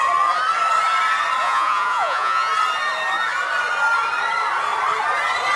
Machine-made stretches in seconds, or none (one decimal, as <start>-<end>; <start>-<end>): 1.4-2.5